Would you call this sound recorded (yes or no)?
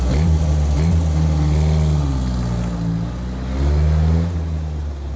yes